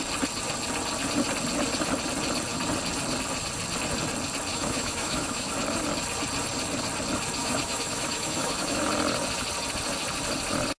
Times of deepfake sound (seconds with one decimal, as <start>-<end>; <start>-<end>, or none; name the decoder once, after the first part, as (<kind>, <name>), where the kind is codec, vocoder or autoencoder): 4.5-5.5 (autoencoder, DAC-VAE); 7.4-8.9